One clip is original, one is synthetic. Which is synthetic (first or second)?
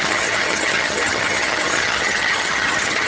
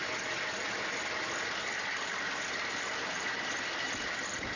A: first